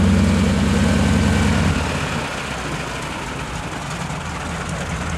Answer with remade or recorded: recorded